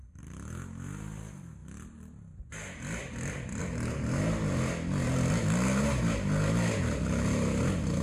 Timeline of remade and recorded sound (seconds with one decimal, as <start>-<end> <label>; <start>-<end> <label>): 0.0-8.0 recorded